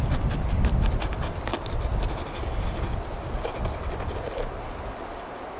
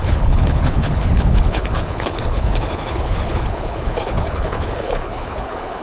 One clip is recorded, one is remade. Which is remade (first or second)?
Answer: second